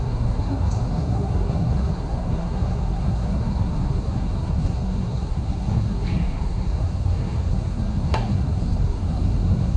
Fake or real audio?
fake